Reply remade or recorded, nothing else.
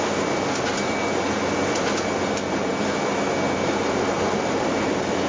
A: recorded